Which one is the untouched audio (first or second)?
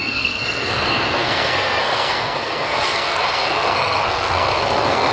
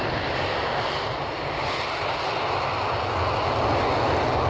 second